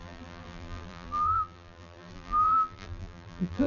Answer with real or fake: fake